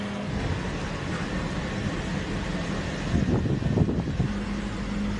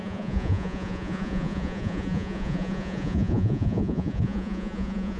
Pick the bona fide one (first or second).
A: first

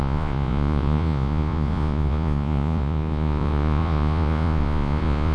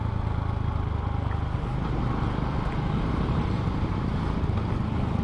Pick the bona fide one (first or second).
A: second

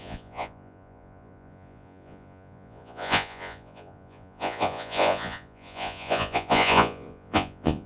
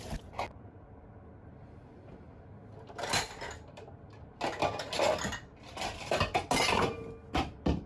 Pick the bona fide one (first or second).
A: second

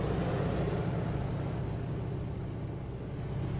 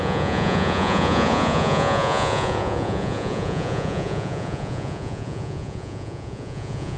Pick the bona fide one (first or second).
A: first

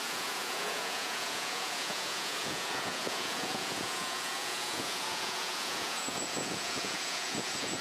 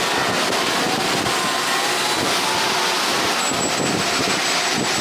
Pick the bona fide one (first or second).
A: second